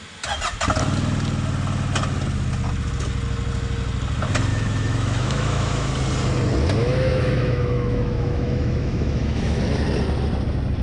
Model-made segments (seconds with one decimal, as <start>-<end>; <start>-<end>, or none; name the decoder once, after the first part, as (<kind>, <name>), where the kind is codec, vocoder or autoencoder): 4.5-5.9 (autoencoder, DAC-VAE); 6.8-9.6